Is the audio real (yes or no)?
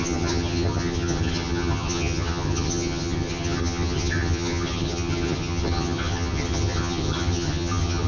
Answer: no